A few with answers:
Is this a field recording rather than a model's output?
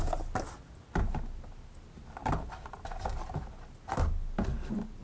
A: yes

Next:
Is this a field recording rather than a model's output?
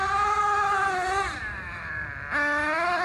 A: yes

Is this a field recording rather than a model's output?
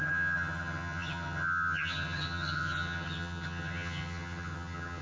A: no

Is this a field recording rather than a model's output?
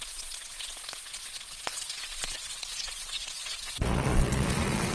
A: no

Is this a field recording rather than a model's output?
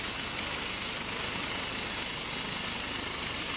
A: yes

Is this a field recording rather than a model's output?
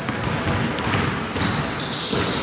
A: yes